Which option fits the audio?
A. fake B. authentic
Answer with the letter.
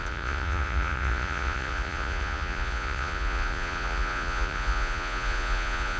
A